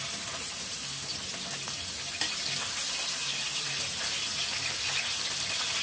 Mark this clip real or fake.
real